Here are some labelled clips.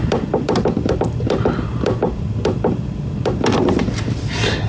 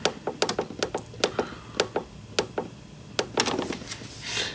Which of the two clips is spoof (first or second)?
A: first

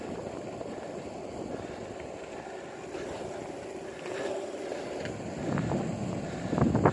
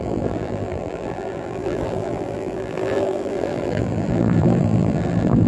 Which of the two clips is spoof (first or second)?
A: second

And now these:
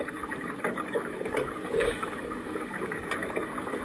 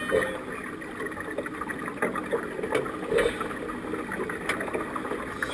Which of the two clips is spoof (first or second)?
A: first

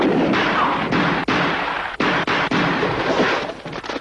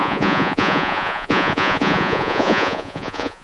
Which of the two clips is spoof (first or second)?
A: second